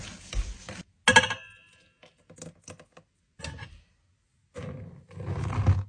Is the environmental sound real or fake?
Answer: real